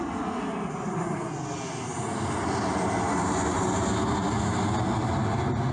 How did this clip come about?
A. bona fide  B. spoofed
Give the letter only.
A